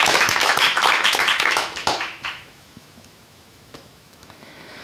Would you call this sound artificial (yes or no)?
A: yes